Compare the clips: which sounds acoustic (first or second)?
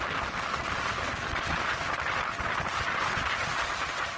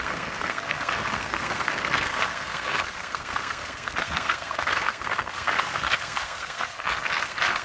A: first